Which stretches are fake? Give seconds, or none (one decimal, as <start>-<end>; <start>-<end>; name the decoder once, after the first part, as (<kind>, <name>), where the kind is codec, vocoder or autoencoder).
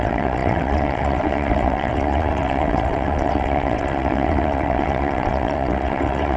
0.0-6.4 (vocoder, WaveNeXt)